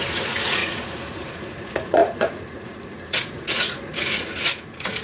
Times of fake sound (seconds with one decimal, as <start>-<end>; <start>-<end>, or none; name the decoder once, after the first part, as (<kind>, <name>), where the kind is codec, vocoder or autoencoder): 0.0-5.0 (vocoder, Vocos)